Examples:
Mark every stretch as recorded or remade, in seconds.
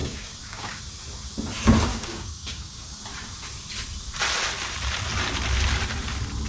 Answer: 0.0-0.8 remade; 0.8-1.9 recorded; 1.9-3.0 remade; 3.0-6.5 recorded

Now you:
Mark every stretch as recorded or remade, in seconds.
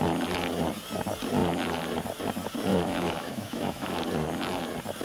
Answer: 0.0-2.7 recorded; 2.7-4.0 remade; 4.0-5.0 recorded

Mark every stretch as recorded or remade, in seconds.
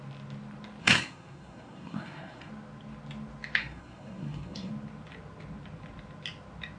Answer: 0.0-0.8 recorded; 0.8-2.5 remade; 2.5-3.6 recorded; 3.6-4.7 remade; 4.7-6.8 recorded